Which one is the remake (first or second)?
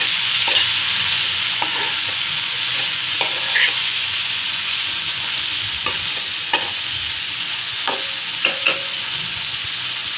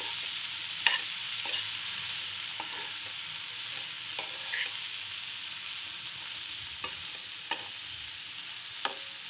first